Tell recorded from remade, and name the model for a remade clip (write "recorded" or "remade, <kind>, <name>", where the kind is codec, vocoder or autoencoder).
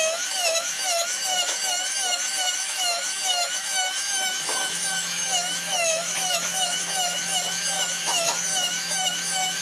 remade, autoencoder, DAC-VAE